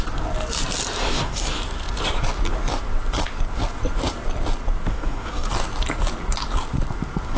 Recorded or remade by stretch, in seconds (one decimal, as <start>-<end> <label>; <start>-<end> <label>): 0.0-1.0 recorded; 1.0-1.6 remade; 1.6-4.9 recorded; 4.9-5.5 remade; 5.5-7.4 recorded